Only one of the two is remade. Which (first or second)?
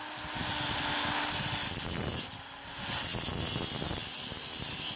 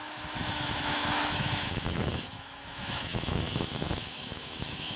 second